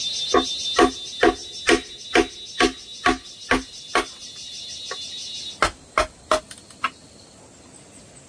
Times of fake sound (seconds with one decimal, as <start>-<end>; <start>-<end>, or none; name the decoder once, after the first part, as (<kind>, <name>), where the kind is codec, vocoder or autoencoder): none